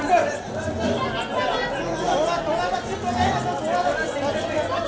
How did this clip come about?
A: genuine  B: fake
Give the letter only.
A